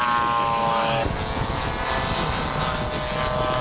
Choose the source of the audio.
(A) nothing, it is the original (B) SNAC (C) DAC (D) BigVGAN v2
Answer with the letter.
A